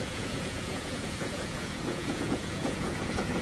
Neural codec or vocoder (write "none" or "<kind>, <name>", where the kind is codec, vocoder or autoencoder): vocoder, Vocos